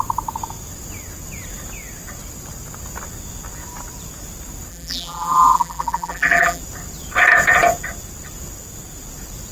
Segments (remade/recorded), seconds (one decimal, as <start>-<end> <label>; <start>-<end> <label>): 0.0-4.7 recorded; 4.7-6.6 remade; 6.6-9.5 recorded